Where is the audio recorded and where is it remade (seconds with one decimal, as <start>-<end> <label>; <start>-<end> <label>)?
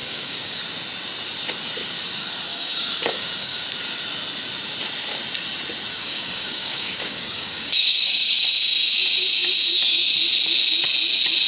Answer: 0.0-0.6 remade; 0.6-2.5 recorded; 2.5-3.6 remade; 3.6-5.9 recorded; 5.9-8.5 remade; 8.5-11.5 recorded